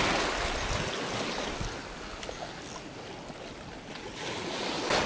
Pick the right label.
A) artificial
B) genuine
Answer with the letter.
B